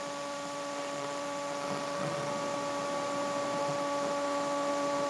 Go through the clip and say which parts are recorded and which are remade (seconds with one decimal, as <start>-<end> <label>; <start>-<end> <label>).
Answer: 0.0-2.3 remade; 2.3-3.6 recorded; 3.6-5.1 remade